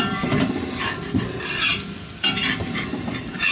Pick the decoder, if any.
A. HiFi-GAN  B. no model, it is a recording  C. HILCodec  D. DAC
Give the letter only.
B